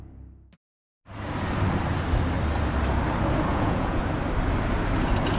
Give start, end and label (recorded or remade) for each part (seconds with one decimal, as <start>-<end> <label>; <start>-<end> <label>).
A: 0.0-3.5 recorded; 3.5-4.0 remade; 4.0-5.4 recorded